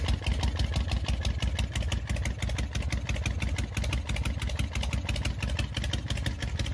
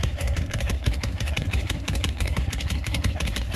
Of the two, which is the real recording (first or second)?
first